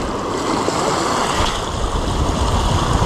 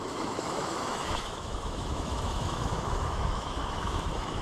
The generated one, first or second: second